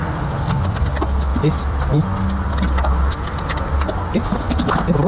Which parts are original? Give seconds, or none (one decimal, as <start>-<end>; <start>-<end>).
0.9-1.3; 1.9-5.1